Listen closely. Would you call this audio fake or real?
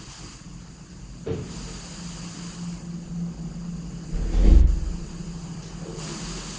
real